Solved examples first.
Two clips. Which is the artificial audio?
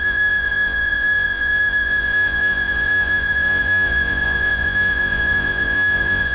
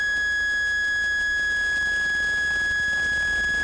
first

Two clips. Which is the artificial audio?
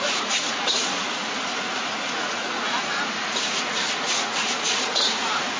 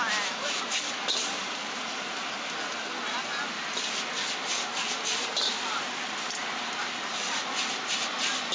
first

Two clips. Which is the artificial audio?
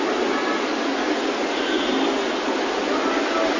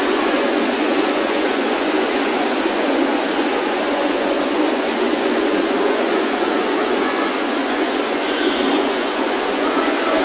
second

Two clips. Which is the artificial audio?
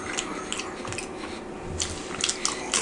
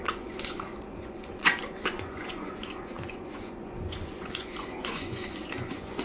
second